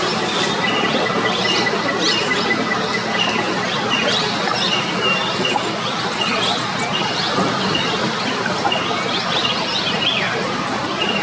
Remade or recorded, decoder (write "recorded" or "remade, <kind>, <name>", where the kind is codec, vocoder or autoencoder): recorded